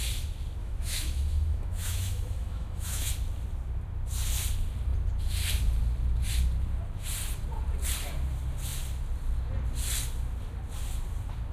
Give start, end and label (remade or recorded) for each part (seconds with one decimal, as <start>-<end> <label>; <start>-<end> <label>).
0.0-0.6 recorded; 0.6-3.1 remade; 3.1-11.5 recorded